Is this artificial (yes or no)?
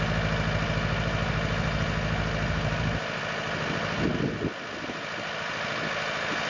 no